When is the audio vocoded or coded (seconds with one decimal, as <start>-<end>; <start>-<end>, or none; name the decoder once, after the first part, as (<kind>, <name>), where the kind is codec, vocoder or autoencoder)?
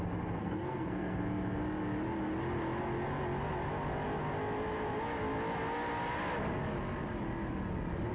0.4-1.2 (codec, SNAC)